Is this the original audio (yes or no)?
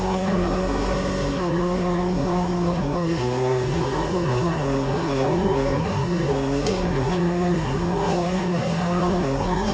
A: no